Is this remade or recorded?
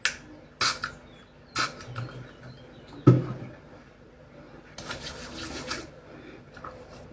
recorded